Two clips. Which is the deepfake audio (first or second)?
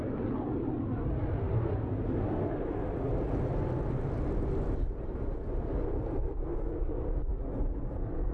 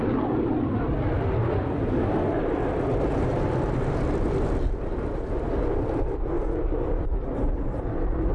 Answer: second